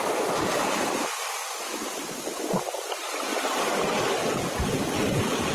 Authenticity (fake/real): real